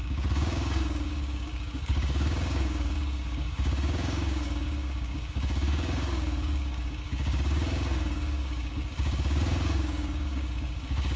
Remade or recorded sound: remade